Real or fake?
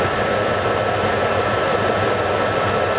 real